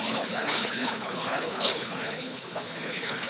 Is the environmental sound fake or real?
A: fake